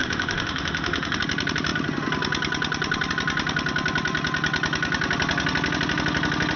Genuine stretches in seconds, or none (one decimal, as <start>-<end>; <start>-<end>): 1.2-6.6